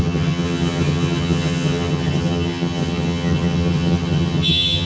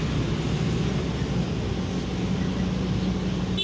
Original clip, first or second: second